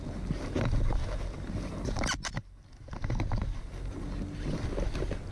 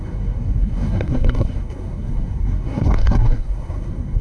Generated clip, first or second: second